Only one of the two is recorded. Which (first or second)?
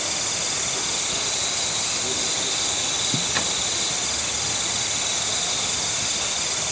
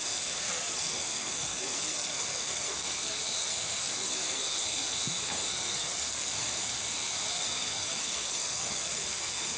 first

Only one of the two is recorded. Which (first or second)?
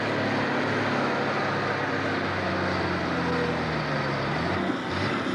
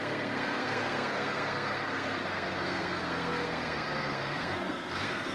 first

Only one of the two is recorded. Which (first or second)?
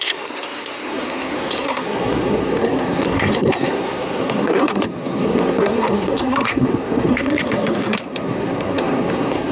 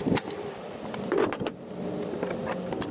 second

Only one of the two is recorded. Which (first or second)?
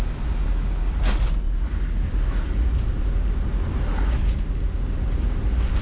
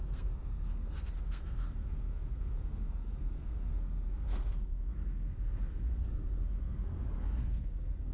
first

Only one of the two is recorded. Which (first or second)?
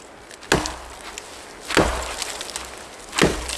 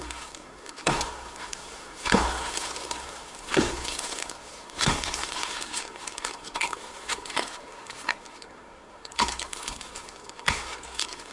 first